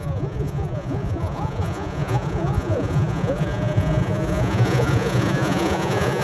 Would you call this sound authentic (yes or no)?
no